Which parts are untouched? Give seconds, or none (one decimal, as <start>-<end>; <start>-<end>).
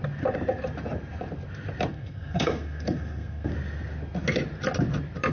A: 0.0-1.9; 3.5-5.3